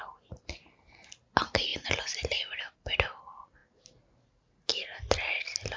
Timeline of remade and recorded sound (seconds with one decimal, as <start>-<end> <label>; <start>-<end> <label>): 0.0-5.8 recorded